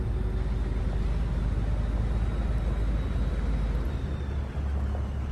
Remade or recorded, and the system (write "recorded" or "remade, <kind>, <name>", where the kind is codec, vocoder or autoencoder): recorded